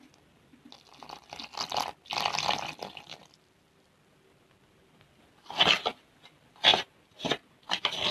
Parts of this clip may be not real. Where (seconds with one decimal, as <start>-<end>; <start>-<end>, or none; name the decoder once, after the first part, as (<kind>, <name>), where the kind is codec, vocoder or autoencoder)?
none